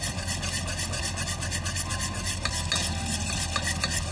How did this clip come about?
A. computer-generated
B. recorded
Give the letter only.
B